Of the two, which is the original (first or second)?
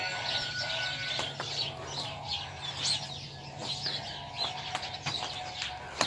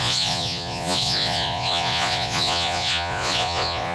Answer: first